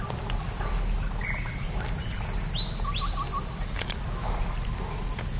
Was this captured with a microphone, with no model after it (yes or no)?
yes